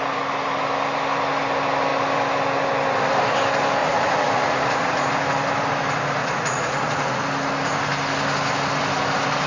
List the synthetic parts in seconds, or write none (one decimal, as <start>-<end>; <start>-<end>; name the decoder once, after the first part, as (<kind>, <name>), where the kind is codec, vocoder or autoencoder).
3.8-5.1 (vocoder, Vocos); 6.2-7.2